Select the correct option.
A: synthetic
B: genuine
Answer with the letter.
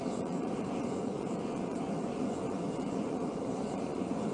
A